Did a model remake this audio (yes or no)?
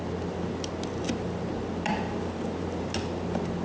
no